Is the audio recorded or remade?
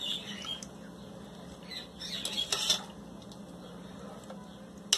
recorded